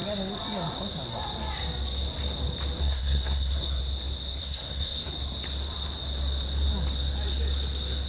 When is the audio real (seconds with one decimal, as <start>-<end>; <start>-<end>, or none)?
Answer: 0.0-2.8; 3.8-4.4; 5.1-8.1